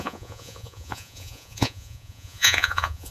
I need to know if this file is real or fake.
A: fake